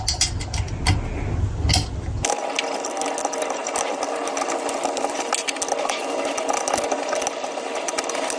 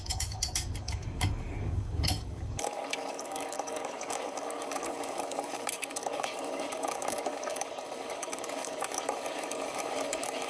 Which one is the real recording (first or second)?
first